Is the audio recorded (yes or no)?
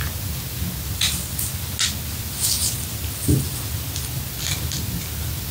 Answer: yes